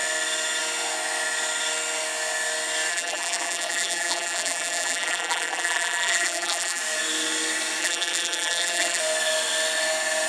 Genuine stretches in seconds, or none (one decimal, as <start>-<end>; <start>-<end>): 0.0-2.9; 6.8-7.8; 9.0-10.3